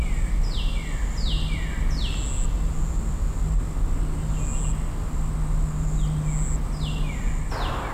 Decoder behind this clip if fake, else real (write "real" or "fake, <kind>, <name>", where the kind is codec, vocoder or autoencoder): real